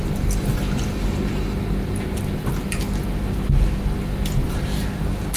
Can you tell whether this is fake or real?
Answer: real